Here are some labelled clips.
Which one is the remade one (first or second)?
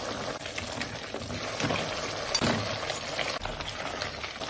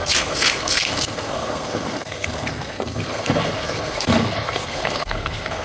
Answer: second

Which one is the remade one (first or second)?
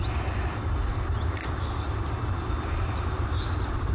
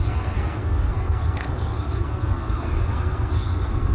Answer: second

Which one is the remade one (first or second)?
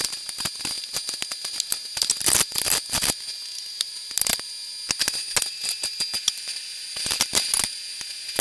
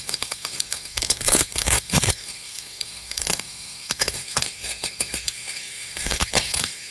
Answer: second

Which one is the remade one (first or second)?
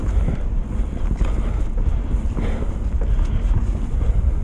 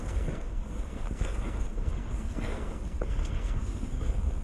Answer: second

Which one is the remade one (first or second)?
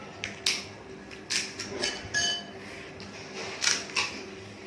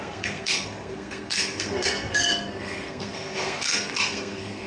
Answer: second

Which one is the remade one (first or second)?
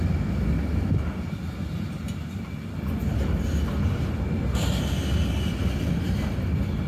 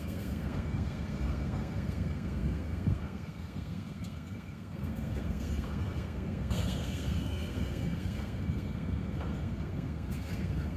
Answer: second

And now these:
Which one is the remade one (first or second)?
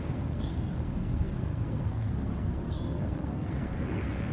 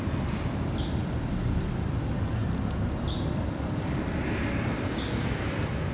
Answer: first